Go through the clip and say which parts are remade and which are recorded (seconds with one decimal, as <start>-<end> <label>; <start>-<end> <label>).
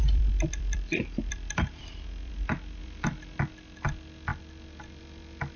0.0-2.3 remade; 2.3-2.8 recorded; 2.8-3.4 remade; 3.4-5.6 recorded